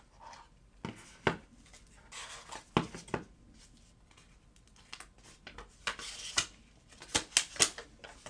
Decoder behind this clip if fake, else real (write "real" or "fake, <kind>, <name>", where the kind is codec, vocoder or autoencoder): real